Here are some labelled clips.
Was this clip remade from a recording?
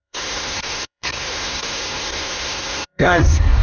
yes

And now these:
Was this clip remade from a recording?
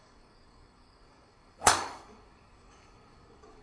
yes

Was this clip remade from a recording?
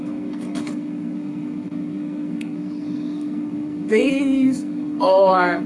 yes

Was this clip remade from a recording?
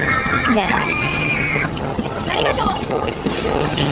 yes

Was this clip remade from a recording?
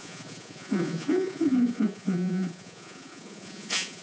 yes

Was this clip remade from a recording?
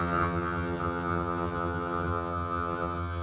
yes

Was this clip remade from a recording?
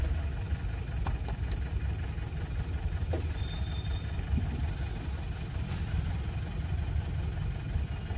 no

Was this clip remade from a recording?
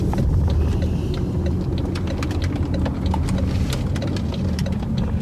no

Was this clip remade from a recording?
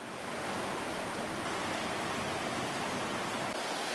no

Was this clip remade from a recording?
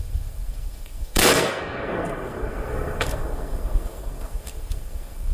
yes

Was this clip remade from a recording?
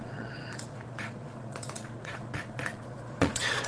yes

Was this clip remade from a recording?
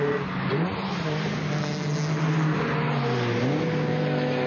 no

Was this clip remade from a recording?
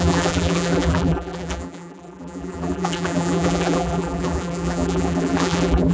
yes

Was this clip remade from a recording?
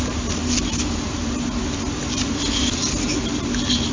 no